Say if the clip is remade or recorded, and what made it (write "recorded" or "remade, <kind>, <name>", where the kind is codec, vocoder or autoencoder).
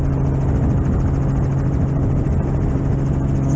recorded